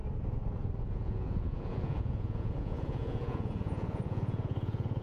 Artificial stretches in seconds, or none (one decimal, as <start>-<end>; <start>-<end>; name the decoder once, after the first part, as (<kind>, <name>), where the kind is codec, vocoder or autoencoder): 0.8-5.0 (vocoder, Vocos)